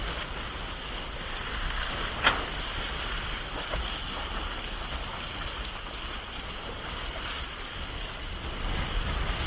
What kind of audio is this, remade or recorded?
recorded